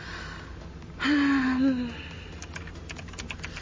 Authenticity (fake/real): real